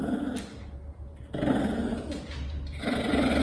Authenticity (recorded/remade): recorded